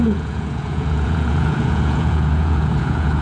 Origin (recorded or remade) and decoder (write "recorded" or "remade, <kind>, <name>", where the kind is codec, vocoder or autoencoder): remade, vocoder, Vocos